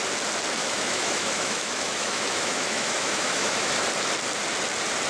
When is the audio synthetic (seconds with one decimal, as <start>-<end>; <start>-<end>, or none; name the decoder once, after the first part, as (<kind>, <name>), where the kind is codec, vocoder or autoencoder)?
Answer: 0.6-3.7 (autoencoder, DAC-VAE)